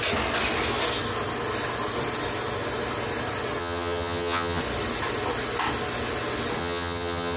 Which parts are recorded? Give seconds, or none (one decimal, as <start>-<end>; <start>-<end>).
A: 0.0-3.6; 4.6-6.6